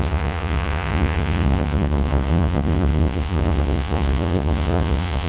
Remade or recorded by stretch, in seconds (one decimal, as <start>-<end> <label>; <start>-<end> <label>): 0.0-5.3 remade